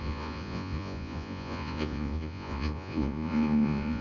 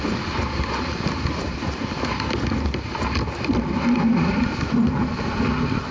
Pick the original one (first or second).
second